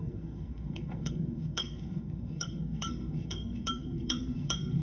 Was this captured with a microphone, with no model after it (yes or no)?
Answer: no